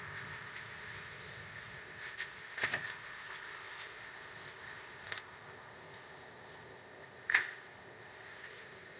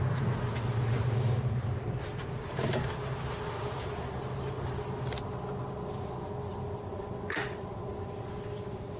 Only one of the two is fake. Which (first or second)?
first